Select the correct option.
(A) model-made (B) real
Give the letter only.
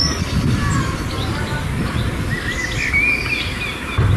B